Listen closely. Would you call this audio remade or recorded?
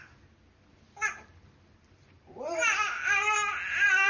recorded